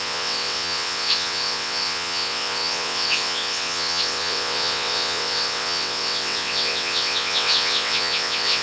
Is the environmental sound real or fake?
fake